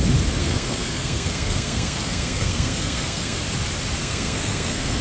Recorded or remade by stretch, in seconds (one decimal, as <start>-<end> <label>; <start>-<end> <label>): 0.0-0.4 recorded; 0.4-3.4 remade; 3.4-4.0 recorded; 4.0-5.0 remade